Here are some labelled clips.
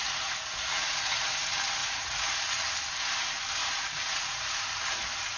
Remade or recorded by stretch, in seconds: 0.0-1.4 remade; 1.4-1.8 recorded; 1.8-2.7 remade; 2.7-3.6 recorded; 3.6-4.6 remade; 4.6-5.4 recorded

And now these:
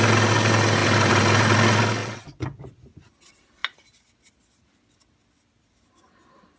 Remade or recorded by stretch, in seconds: 0.0-2.0 recorded; 2.0-2.6 remade; 2.6-6.6 recorded

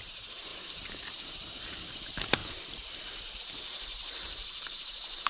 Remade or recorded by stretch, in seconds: 0.0-5.3 remade